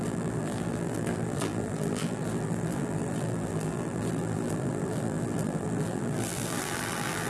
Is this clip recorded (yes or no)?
no